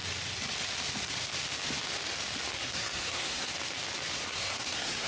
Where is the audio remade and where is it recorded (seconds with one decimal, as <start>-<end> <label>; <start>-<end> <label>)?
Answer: 0.0-2.6 recorded; 2.6-3.5 remade; 3.5-4.2 recorded; 4.2-5.1 remade